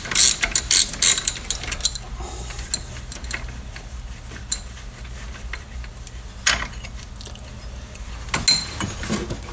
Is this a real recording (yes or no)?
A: yes